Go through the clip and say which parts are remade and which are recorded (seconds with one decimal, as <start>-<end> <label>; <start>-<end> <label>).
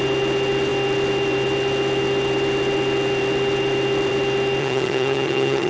0.0-4.6 recorded; 4.6-5.7 remade